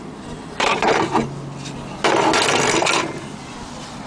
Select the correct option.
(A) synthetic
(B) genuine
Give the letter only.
B